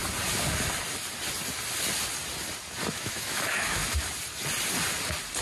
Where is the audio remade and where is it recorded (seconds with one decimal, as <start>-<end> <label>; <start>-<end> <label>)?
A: 0.0-2.9 recorded; 2.9-3.8 remade; 3.8-5.4 recorded